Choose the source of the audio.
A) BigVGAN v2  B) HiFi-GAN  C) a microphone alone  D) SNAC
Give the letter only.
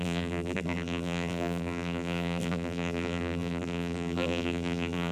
A